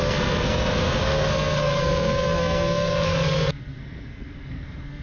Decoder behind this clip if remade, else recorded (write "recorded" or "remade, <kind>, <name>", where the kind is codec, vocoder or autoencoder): remade, codec, SNAC